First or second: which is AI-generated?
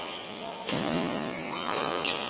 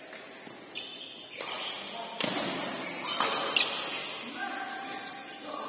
first